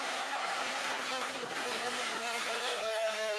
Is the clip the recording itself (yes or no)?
no